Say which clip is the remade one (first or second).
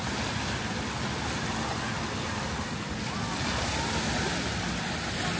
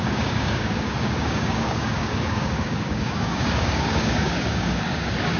second